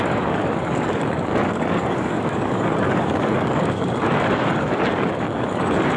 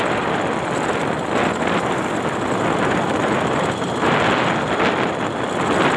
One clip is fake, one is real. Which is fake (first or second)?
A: first